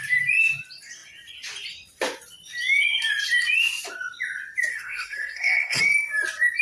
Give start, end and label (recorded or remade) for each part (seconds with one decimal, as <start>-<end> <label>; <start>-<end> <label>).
0.0-4.7 recorded; 4.7-5.8 remade; 5.8-6.6 recorded